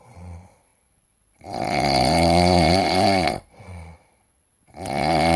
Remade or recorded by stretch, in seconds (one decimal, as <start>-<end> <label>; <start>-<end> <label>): 0.0-5.4 remade